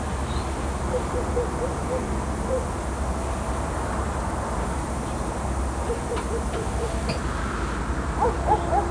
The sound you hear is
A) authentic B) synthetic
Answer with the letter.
A